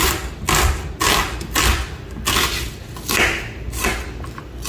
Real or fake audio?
real